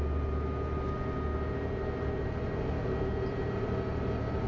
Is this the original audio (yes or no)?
yes